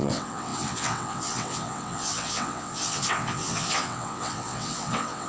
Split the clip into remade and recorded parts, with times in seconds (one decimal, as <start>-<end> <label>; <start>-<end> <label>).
0.0-5.3 remade